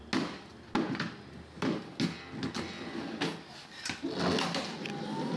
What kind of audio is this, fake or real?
real